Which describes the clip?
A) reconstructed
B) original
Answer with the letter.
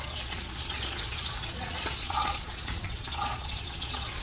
A